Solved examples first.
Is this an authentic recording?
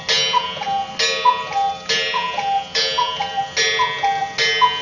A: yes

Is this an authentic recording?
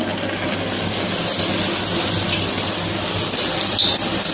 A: yes